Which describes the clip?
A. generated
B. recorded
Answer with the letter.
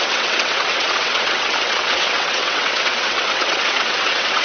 A